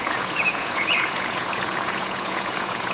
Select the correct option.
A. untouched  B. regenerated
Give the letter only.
B